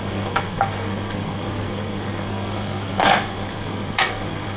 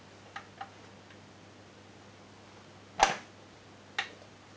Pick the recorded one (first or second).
second